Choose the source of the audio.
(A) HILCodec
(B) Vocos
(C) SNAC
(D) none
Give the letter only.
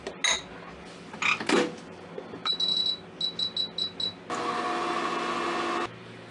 D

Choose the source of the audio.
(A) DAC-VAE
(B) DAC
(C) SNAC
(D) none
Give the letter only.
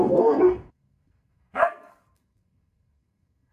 C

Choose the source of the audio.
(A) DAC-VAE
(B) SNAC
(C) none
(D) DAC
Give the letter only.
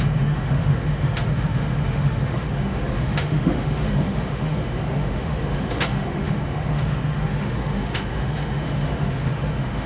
A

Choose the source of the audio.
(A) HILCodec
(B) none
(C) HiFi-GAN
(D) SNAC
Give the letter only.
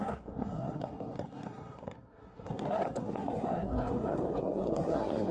D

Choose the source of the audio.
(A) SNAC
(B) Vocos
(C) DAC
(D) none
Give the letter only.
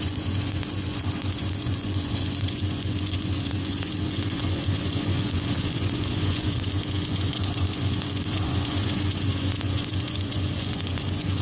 B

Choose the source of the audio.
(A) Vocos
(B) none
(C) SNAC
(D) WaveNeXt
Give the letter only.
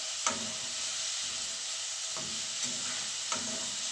B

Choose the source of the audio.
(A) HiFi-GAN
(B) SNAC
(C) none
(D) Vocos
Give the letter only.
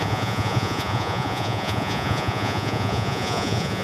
D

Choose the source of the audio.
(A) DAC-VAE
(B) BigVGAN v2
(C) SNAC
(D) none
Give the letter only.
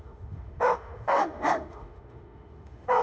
A